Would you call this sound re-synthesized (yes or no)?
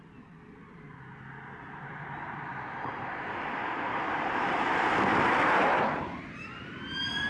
no